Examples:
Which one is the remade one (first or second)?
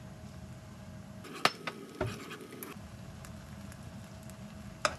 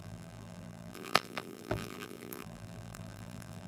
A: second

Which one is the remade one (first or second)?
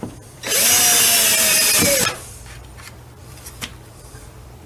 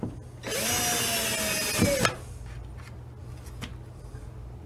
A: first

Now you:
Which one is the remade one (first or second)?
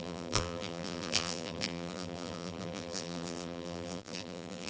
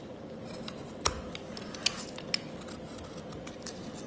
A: first